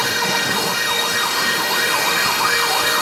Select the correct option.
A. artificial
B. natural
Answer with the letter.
A